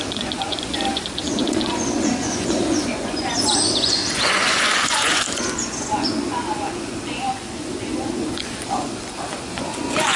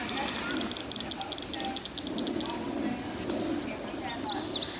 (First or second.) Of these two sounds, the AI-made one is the first